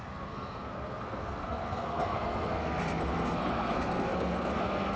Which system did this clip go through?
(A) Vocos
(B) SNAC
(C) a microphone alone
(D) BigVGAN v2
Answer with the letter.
B